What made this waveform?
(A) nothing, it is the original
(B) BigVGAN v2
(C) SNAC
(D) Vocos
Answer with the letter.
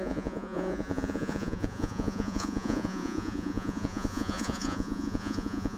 D